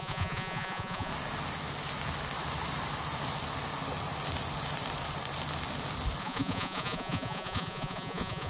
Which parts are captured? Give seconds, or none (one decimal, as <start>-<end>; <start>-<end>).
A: 1.1-6.2